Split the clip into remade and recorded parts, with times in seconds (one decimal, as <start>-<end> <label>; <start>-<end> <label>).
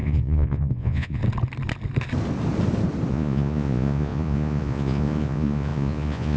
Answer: 0.0-1.2 remade; 1.2-3.1 recorded; 3.1-6.4 remade